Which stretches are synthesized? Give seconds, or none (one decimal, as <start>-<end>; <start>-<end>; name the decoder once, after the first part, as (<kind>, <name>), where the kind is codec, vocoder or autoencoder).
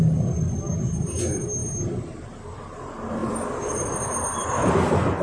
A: 3.2-4.7 (vocoder, BigVGAN v2)